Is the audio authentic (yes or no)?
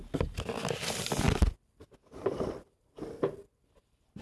yes